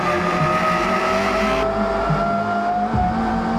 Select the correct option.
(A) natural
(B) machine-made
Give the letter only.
A